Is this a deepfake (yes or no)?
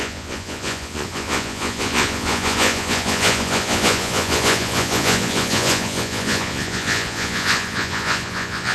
yes